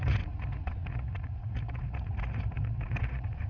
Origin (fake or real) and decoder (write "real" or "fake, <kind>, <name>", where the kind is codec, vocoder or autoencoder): fake, vocoder, Vocos